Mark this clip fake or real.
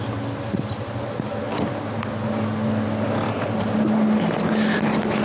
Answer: real